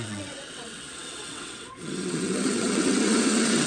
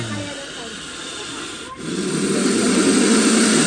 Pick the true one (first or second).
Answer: second